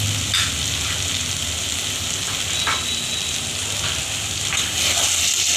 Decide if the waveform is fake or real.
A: real